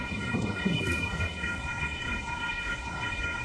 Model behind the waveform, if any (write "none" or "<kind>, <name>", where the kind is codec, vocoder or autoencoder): codec, SNAC